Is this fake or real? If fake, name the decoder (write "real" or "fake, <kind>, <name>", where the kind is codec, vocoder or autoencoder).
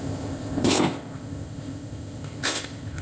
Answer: fake, codec, ZipCodec